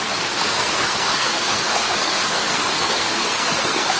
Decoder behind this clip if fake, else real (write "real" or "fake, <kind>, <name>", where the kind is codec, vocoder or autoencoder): fake, codec, SNAC